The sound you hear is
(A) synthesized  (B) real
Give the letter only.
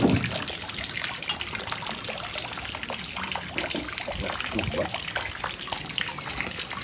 B